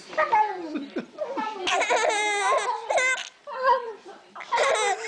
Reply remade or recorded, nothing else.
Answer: recorded